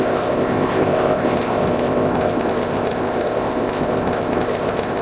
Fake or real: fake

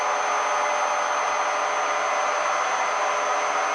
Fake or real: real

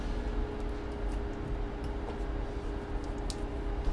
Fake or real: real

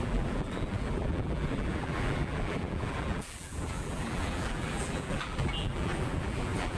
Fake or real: fake